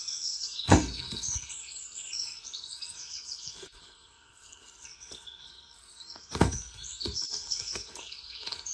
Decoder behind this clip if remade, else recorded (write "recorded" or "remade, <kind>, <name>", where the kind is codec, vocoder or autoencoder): remade, codec, SNAC